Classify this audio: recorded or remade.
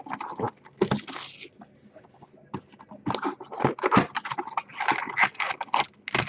recorded